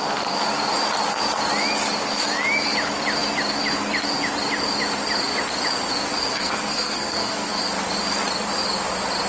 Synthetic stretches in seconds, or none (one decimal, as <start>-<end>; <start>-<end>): 6.3-7.6